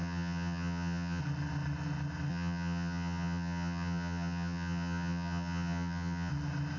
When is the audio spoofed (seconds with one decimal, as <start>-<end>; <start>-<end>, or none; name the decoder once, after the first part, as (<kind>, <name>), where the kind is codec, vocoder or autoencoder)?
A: 0.0-1.2 (vocoder, HiFi-GAN); 2.3-6.3